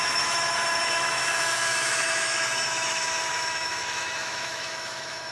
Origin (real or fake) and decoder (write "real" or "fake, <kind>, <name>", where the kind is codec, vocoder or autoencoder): fake, autoencoder, DAC-VAE